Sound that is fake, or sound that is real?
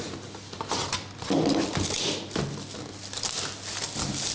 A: real